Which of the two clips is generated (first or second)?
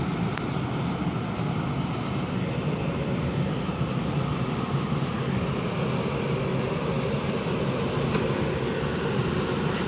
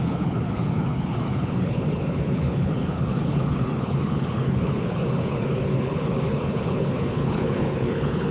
second